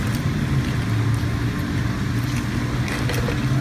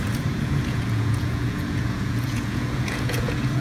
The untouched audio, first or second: first